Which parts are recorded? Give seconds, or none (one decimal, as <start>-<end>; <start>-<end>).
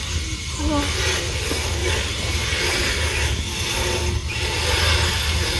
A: 0.0-1.8; 2.9-4.2